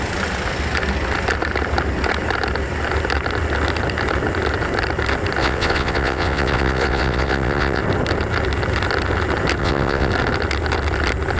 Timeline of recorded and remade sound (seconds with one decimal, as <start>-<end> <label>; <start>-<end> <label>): 0.0-5.4 recorded; 5.4-7.8 remade; 7.8-9.6 recorded; 9.6-10.1 remade; 10.1-11.4 recorded